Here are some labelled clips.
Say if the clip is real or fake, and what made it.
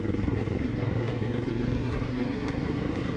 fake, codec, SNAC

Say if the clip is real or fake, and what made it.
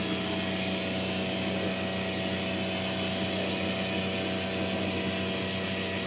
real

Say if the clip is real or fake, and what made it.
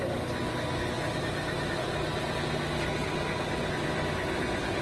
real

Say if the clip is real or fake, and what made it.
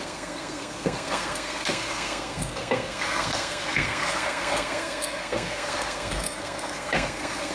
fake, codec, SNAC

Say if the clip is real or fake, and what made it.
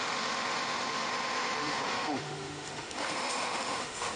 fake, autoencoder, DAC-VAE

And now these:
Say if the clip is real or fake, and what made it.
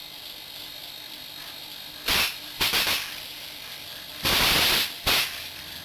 fake, vocoder, BigVGAN v2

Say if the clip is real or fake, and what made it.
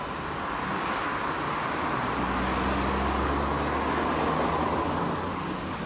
real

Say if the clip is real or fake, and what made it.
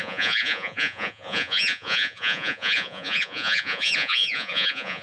fake, vocoder, Vocos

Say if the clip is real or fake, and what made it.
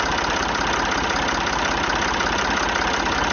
real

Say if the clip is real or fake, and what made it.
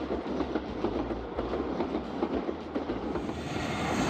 real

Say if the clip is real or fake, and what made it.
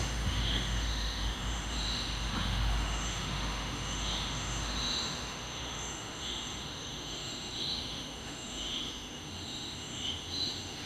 fake, autoencoder, DAC-VAE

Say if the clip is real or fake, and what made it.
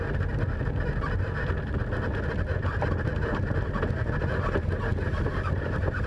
real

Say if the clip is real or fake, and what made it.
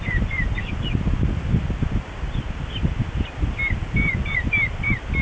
real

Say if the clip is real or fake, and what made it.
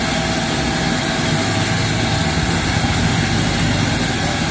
real